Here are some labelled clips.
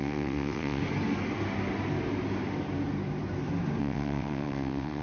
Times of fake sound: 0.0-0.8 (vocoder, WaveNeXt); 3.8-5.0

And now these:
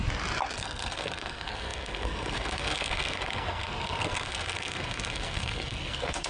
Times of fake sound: 0.6-6.3 (codec, SNAC)

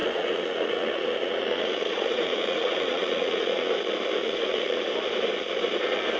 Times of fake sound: 0.0-3.7 (vocoder, Vocos); 4.2-4.8

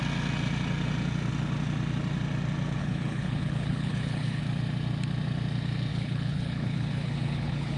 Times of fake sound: 2.8-4.4 (codec, HILCodec); 5.9-7.8